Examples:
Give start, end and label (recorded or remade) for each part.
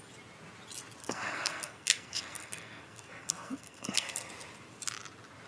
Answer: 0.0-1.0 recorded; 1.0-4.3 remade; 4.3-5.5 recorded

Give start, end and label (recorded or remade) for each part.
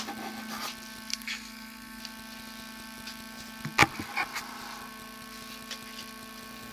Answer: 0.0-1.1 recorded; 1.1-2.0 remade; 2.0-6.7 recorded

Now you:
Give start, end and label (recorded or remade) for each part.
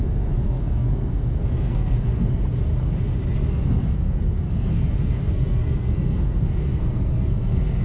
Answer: 0.0-2.4 remade; 2.4-3.5 recorded; 3.5-7.8 remade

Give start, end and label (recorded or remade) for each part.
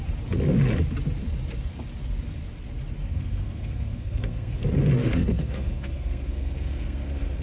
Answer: 0.0-3.0 recorded; 3.0-4.6 remade; 4.6-5.0 recorded; 5.0-7.4 remade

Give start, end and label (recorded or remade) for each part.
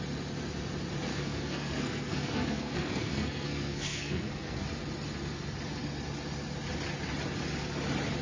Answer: 0.0-1.1 recorded; 1.1-4.6 remade; 4.6-8.2 recorded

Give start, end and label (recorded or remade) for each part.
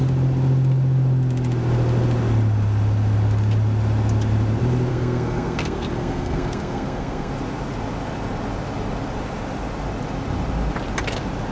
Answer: 0.0-4.9 recorded; 4.9-7.3 remade; 7.3-11.5 recorded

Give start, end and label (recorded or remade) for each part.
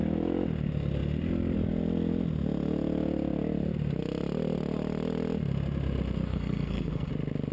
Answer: 0.0-6.3 recorded; 6.3-7.1 remade; 7.1-7.5 recorded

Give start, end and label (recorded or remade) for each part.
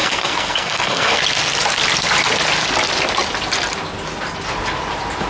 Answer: 0.0-1.2 remade; 1.2-5.3 recorded